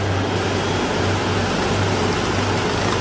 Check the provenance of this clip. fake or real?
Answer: real